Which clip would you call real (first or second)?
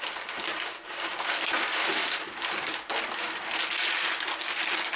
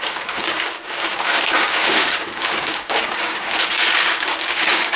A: first